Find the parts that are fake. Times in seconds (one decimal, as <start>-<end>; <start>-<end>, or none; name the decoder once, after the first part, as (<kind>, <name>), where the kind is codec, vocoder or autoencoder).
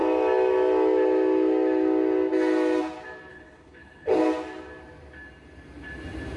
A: 3.3-4.2 (codec, HILCodec)